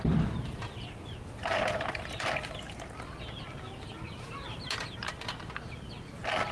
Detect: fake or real real